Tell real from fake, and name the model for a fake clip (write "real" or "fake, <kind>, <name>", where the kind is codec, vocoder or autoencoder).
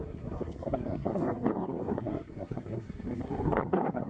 fake, codec, SNAC